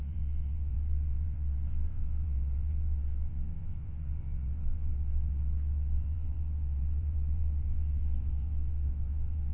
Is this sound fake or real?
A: fake